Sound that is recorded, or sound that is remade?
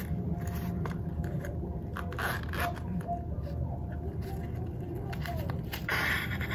recorded